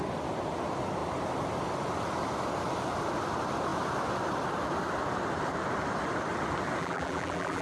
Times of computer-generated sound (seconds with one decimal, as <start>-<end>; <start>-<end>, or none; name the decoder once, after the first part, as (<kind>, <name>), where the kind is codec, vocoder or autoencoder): 6.8-7.6 (vocoder, BigVGAN v2)